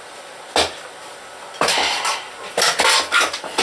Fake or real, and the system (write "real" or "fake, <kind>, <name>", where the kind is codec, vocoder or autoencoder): real